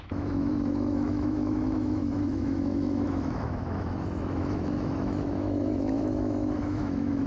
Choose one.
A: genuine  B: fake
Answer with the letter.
B